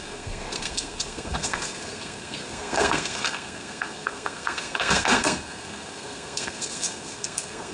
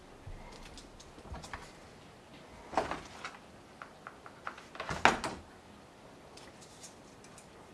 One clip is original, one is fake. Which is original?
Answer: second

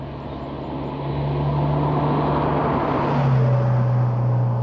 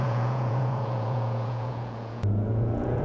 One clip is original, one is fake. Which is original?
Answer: first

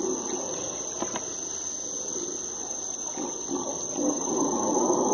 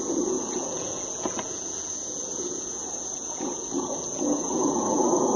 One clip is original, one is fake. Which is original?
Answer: first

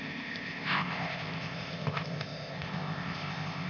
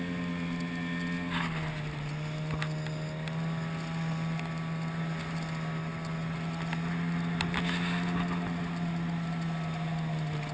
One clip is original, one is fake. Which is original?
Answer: second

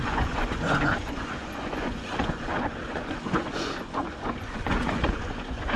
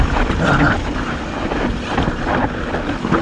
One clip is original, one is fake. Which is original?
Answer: second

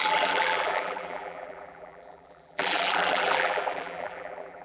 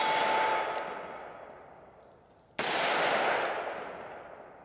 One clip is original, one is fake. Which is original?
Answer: second